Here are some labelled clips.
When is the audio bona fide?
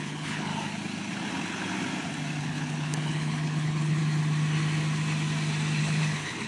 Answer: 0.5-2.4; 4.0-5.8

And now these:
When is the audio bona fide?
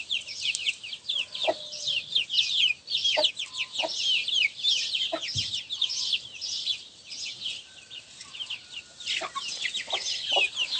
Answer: 0.0-10.8